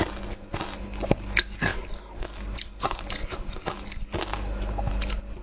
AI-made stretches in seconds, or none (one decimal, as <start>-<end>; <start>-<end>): 1.7-4.2